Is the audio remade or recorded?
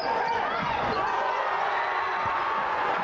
remade